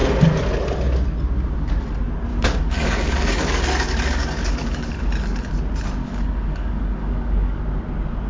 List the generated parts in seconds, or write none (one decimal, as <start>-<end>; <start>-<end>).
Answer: 2.3-5.5; 6.0-7.6